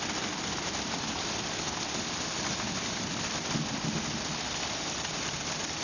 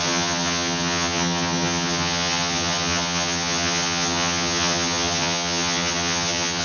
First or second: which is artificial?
second